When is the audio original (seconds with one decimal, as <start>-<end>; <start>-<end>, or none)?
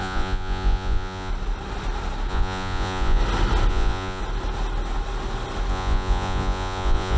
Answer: 1.3-2.3; 3.2-3.7; 4.2-5.7